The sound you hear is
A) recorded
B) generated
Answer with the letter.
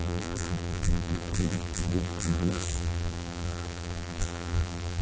B